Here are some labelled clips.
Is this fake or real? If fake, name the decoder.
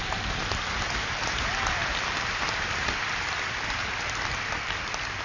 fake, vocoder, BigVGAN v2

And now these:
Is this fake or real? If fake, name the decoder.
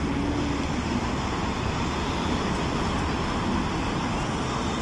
real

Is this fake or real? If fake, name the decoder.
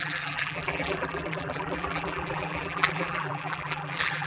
fake, vocoder, BigVGAN v2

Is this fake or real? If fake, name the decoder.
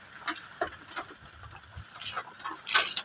real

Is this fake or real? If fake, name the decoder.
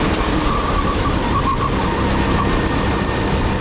real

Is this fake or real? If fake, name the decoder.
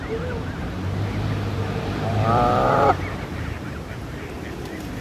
fake, vocoder, BigVGAN v2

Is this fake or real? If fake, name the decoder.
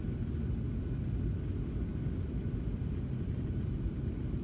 real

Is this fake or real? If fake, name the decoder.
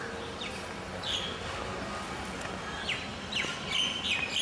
real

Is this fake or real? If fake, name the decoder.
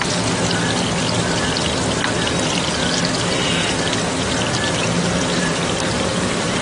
real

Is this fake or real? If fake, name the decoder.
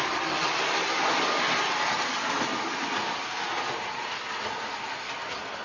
real